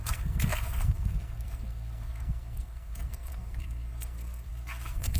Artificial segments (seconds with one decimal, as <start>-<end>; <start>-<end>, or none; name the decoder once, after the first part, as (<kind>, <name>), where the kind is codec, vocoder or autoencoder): 0.0-5.2 (codec, SNAC)